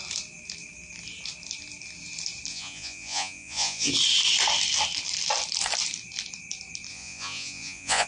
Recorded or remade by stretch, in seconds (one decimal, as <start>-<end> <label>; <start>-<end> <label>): 0.0-2.5 recorded; 2.5-3.9 remade; 3.9-6.9 recorded; 6.9-8.1 remade